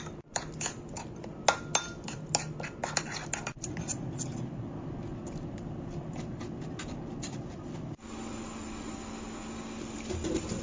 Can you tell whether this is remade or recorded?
recorded